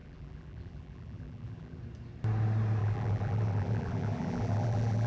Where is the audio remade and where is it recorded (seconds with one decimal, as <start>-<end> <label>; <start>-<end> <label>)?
0.0-1.8 remade; 1.8-2.8 recorded; 2.8-5.1 remade